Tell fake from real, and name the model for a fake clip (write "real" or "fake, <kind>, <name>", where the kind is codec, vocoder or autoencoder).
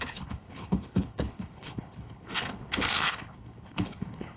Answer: fake, codec, HILCodec